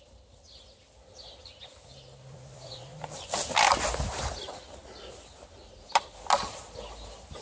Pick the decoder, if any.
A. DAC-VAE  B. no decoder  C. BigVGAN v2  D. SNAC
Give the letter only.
B